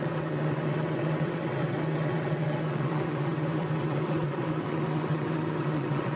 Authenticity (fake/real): fake